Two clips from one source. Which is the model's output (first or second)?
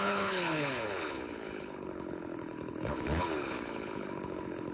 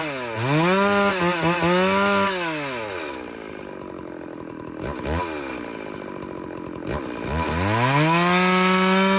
first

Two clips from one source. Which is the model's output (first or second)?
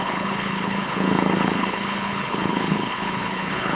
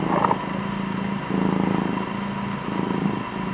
first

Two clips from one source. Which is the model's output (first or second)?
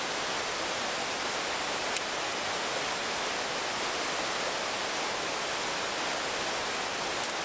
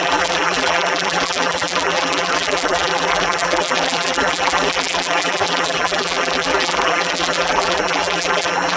second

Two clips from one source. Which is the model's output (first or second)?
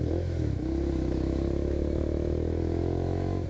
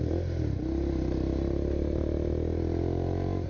first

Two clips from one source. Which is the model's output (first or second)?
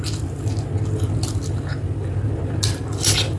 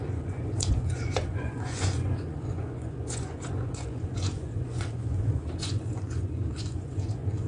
second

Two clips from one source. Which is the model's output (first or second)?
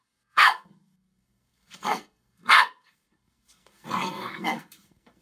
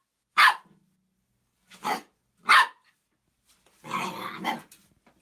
first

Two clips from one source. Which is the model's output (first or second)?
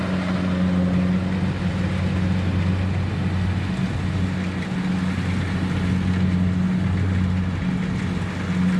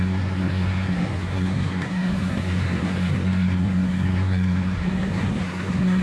second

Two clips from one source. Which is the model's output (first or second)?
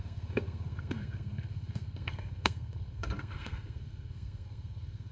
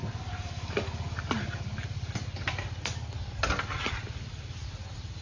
first